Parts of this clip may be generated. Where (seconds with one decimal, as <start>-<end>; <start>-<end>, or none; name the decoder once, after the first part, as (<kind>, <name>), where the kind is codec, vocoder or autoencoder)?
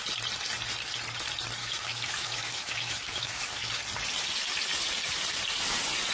1.6-3.7 (autoencoder, DAC-VAE)